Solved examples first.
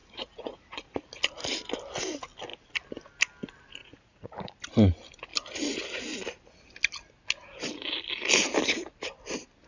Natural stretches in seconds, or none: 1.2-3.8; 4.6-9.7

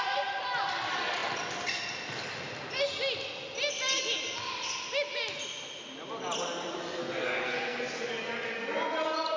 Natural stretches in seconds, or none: 0.0-7.0; 7.8-9.4

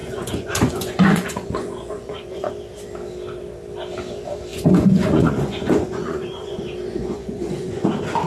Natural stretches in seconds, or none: 2.5-4.5; 7.9-8.3

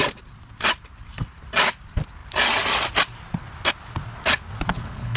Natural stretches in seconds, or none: 0.0-4.7

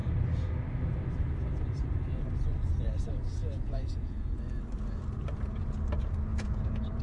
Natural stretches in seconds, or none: 0.0-3.4; 4.4-6.3

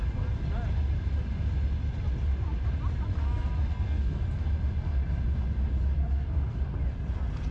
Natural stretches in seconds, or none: 0.0-3.7; 4.2-6.0; 6.6-7.5

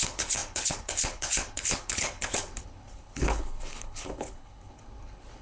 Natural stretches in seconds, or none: none

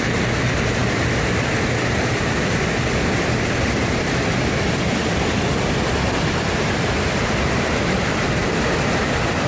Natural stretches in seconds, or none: 8.4-9.0